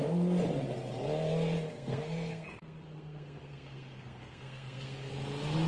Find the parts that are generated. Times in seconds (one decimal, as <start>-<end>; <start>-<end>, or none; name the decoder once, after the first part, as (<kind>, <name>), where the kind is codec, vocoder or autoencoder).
1.7-5.1 (codec, SNAC)